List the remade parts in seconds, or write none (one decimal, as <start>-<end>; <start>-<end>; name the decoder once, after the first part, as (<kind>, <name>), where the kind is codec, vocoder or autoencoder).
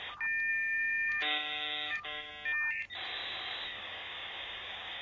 0.5-2.3 (codec, DAC); 3.2-5.0